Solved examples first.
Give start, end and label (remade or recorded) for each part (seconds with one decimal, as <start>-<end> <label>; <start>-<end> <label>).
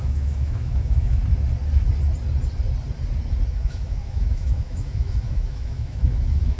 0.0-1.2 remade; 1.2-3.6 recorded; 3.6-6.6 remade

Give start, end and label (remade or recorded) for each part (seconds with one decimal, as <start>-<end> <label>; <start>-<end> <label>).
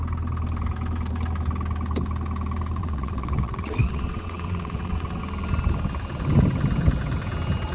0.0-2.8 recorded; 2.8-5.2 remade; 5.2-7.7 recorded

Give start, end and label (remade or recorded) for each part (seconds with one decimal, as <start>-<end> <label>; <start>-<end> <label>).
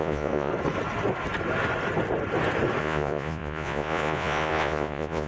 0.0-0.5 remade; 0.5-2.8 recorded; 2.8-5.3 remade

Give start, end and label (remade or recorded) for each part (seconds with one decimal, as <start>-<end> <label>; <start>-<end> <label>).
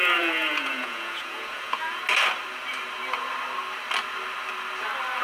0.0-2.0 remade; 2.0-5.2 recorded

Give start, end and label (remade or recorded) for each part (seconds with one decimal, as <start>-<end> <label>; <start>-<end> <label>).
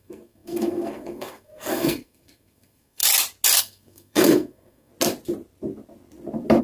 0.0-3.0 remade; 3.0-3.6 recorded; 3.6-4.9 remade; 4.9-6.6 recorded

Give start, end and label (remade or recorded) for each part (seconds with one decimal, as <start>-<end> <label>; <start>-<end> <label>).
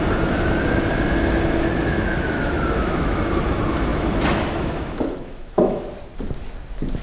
0.0-2.1 recorded; 2.1-3.2 remade; 3.2-3.9 recorded; 3.9-5.8 remade; 5.8-7.0 recorded